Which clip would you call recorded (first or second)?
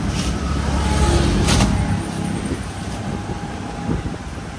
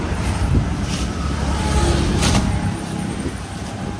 first